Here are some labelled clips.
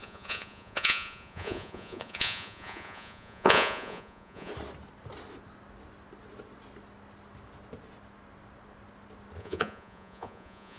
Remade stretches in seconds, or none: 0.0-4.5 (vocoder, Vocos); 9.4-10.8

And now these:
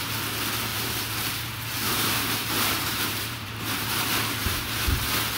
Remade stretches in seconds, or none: 0.7-3.9 (vocoder, BigVGAN v2); 4.4-5.0

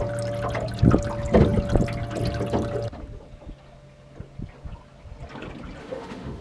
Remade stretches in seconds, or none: 5.8-6.4 (autoencoder, DAC-VAE)

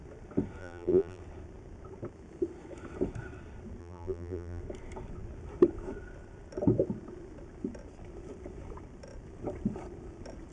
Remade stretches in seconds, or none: 0.6-1.2 (vocoder, BigVGAN v2); 3.8-4.6